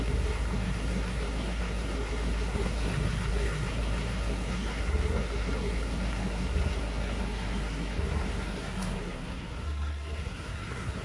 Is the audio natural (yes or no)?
no